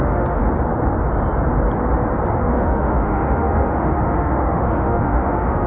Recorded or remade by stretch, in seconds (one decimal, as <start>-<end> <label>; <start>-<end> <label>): 0.0-0.4 remade; 0.4-2.4 recorded; 2.4-5.7 remade